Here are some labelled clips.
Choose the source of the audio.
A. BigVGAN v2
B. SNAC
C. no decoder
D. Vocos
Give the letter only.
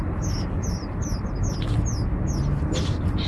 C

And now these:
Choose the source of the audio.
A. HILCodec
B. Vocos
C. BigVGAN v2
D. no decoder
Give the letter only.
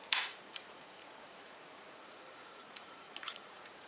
B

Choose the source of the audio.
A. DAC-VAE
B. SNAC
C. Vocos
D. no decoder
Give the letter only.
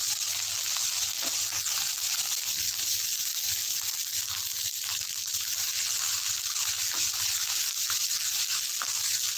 D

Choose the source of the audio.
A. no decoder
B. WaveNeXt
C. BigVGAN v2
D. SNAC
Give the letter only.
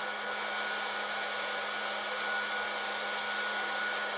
A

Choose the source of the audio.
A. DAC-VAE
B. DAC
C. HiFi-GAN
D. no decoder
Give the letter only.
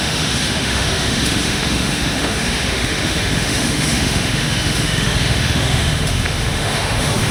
A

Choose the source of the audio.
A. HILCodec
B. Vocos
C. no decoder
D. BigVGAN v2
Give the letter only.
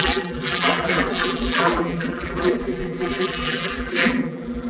D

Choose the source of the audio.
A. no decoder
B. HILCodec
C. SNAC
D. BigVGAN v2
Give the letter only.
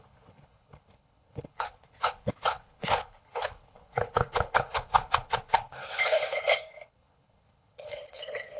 B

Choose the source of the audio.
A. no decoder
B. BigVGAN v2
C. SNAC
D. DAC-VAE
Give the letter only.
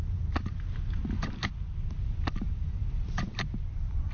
A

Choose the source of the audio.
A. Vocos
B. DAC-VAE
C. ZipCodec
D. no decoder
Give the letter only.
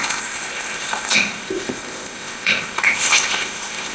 C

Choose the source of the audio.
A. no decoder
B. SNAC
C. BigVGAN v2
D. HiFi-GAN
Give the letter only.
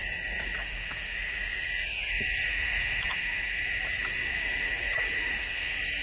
A